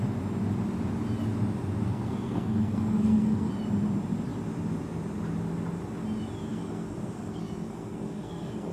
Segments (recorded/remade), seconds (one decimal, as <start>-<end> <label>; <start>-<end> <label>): 0.0-1.8 recorded; 1.8-3.5 remade; 3.5-6.5 recorded; 6.5-8.7 remade

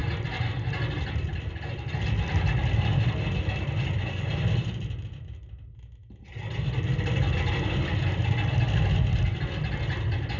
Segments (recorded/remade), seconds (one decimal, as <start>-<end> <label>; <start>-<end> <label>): 0.0-10.4 recorded

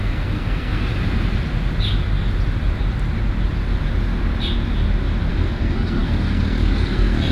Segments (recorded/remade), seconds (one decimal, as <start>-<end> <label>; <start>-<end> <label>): 0.0-0.9 remade; 0.9-5.3 recorded; 5.3-7.3 remade

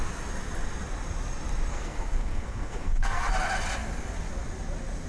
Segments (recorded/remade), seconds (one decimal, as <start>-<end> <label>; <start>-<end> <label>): 0.0-1.7 recorded; 1.7-3.3 remade; 3.3-5.1 recorded